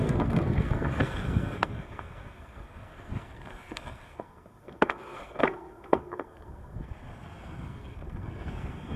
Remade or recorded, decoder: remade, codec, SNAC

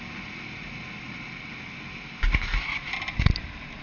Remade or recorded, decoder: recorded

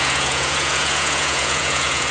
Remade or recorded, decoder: remade, vocoder, Vocos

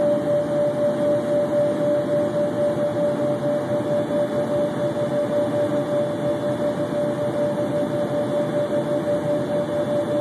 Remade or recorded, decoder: recorded